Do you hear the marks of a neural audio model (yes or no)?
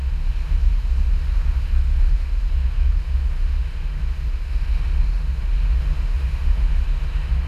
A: yes